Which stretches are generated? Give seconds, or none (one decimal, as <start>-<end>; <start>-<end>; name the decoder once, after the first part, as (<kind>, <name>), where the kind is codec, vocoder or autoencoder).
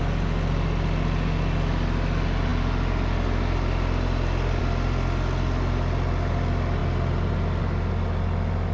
none